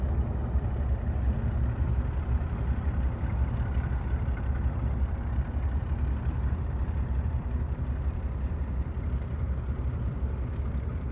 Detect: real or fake real